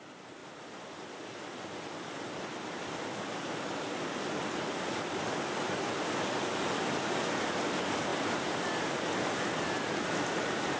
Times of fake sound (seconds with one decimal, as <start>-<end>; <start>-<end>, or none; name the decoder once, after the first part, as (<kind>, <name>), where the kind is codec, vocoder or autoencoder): none